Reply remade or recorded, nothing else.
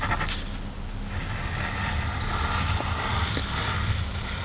recorded